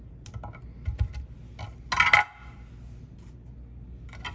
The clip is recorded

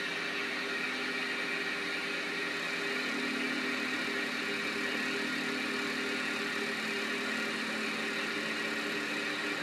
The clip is recorded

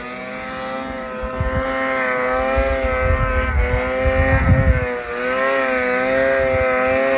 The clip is recorded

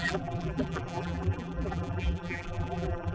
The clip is remade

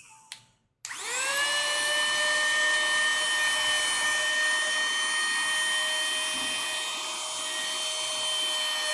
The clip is recorded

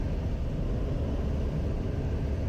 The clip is recorded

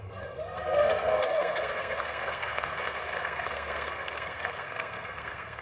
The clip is remade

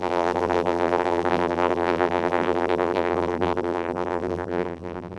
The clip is remade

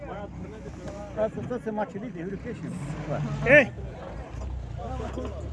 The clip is recorded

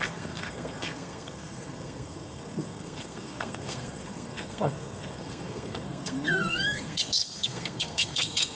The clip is remade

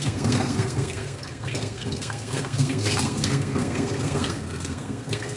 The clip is remade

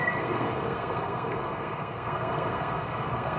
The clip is remade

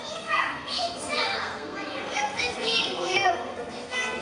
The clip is remade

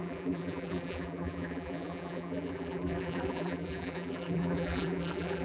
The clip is remade